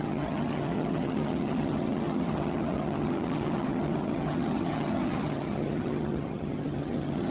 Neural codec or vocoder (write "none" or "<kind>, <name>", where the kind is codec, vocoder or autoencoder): vocoder, HiFi-GAN